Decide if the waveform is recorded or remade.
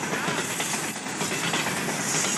recorded